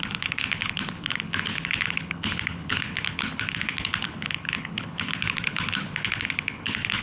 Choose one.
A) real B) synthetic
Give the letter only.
B